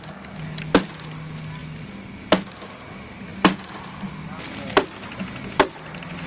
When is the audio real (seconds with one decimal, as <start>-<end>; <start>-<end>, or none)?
0.0-6.3